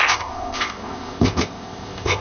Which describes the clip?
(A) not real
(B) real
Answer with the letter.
A